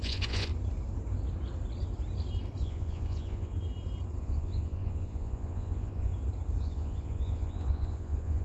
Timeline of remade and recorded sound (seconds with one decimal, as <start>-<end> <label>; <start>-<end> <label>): 0.0-0.5 remade; 0.5-2.6 recorded; 2.6-3.5 remade; 3.5-4.2 recorded; 4.2-6.1 remade; 6.1-6.6 recorded; 6.6-8.4 remade